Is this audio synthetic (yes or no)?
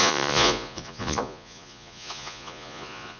yes